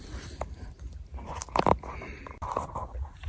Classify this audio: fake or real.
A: fake